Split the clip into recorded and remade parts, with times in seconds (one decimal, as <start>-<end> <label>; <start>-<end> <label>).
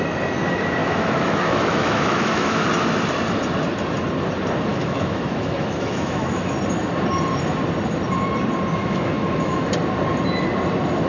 0.0-0.8 recorded; 0.8-2.7 remade; 2.7-4.7 recorded; 4.7-6.5 remade; 6.5-8.8 recorded; 8.8-9.7 remade; 9.7-11.1 recorded